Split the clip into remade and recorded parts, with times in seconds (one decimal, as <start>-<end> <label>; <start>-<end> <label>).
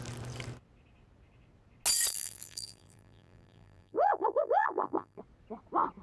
0.0-2.1 recorded; 2.1-5.2 remade; 5.2-6.0 recorded